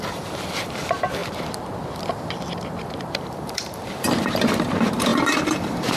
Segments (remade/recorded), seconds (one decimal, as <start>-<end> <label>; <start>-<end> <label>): 0.0-1.2 remade; 1.2-3.1 recorded; 3.1-6.0 remade